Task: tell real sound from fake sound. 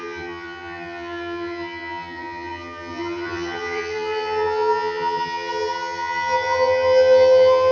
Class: fake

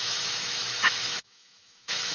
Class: fake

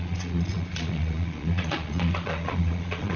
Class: fake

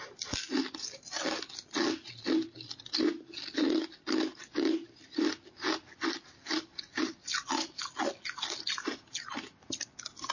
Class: real